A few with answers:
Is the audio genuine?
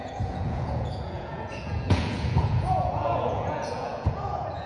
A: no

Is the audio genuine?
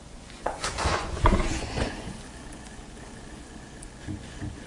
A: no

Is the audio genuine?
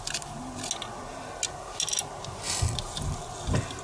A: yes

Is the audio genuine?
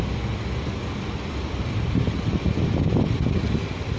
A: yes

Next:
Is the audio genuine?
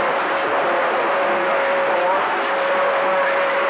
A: yes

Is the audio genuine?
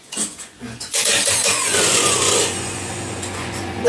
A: no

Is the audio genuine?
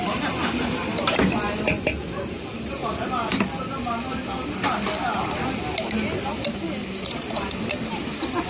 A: yes